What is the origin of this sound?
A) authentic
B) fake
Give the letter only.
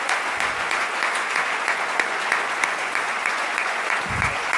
B